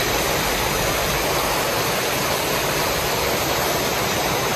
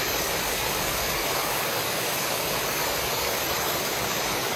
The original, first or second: first